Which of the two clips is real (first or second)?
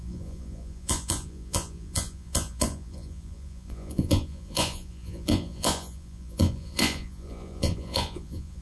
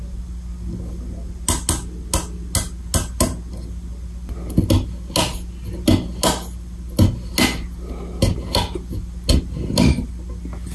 second